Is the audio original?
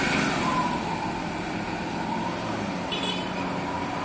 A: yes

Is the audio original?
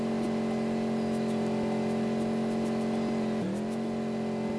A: yes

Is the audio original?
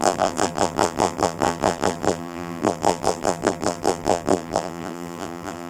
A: no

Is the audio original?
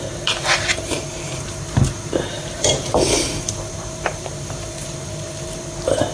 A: no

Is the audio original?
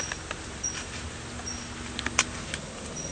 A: yes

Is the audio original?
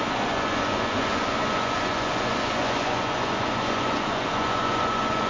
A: no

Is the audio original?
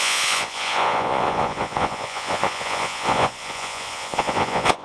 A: no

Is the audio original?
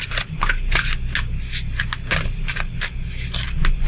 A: yes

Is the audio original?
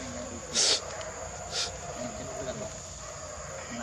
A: yes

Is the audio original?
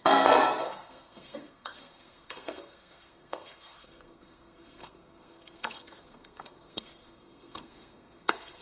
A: no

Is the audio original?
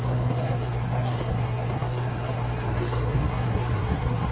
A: no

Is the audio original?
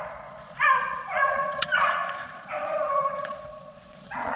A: no